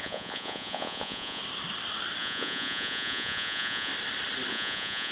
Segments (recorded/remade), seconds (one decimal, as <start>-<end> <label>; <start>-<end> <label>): 0.0-1.4 remade; 1.4-2.2 recorded; 2.2-3.9 remade; 3.9-4.5 recorded; 4.5-5.1 remade